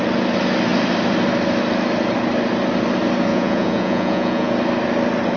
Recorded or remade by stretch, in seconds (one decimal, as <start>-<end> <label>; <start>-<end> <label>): 0.0-3.3 recorded; 3.3-4.5 remade; 4.5-5.4 recorded